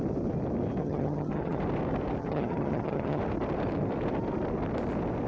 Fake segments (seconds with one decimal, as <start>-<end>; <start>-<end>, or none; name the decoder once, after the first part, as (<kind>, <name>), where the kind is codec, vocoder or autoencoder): 0.8-1.6 (vocoder, HiFi-GAN); 2.2-3.2